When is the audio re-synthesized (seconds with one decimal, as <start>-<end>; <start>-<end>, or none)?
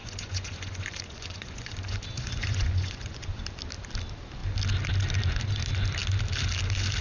0.0-3.4